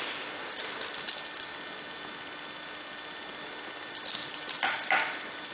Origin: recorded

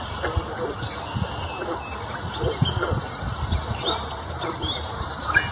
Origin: recorded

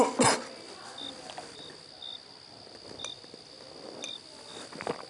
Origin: recorded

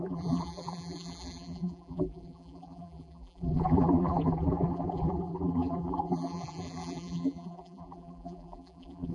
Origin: remade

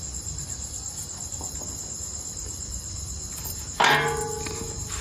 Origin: recorded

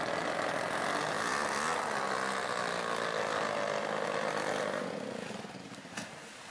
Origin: recorded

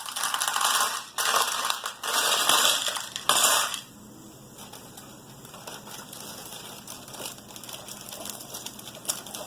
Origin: recorded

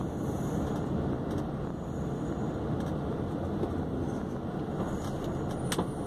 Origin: recorded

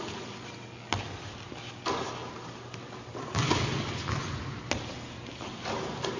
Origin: recorded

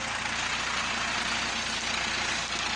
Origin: recorded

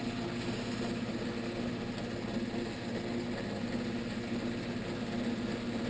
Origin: recorded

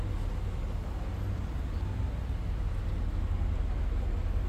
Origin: recorded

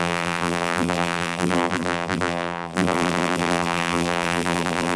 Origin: remade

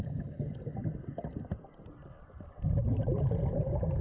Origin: remade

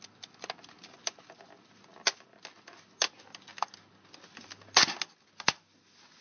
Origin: recorded